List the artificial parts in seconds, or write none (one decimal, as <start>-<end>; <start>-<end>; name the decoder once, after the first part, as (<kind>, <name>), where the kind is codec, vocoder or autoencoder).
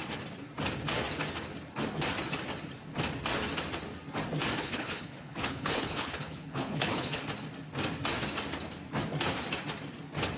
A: 4.6-7.2 (codec, HILCodec)